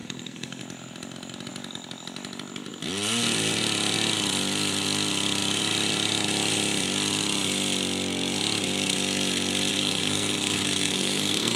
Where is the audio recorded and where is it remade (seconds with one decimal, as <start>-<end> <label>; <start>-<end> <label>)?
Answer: 0.0-0.6 remade; 0.6-9.7 recorded; 9.7-11.6 remade